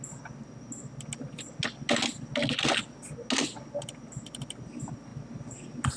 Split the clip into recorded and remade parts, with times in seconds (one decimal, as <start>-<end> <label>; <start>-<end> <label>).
0.0-6.0 recorded